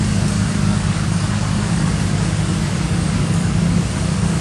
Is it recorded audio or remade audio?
remade